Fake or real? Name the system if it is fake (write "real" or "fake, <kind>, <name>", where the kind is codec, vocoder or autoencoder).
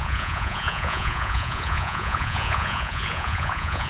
fake, vocoder, Vocos